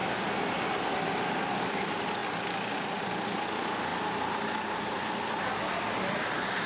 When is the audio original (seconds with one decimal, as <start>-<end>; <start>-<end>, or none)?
0.0-1.6; 2.2-3.1; 3.9-6.7